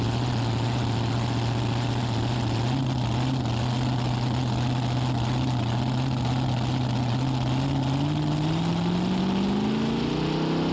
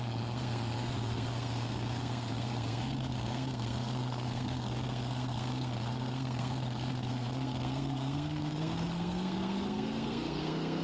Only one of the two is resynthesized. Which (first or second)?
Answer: second